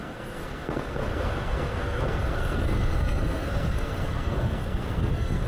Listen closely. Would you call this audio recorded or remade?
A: remade